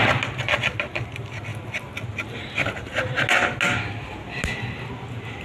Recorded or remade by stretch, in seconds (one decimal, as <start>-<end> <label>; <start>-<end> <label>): 0.0-5.4 recorded